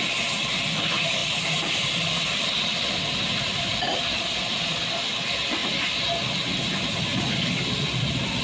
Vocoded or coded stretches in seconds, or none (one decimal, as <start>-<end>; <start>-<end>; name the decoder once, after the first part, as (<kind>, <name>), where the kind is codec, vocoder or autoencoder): 1.2-4.4 (vocoder, BigVGAN v2); 7.1-7.8